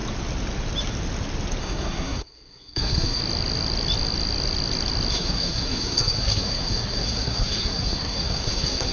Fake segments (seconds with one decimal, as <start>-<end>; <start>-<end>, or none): 1.6-3.2; 5.1-8.9